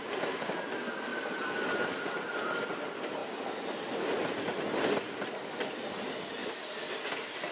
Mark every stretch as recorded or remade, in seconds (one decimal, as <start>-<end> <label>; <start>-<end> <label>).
0.0-1.1 recorded; 1.1-2.7 remade; 2.7-3.2 recorded; 3.2-3.9 remade; 3.9-6.4 recorded; 6.4-7.1 remade; 7.1-7.5 recorded